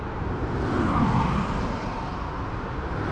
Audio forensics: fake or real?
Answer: real